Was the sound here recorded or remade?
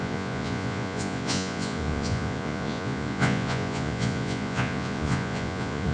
remade